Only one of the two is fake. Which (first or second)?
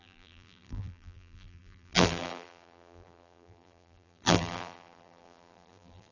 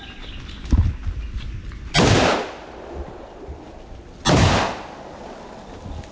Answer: first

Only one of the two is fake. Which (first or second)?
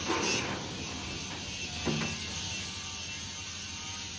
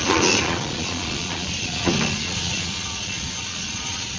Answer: second